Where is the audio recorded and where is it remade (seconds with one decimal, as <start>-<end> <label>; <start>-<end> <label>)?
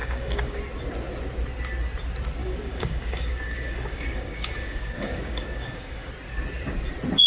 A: 0.0-0.6 remade; 0.6-2.4 recorded; 2.4-6.1 remade; 6.1-7.3 recorded